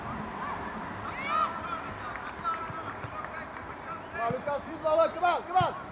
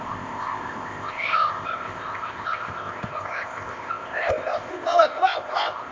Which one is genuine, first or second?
first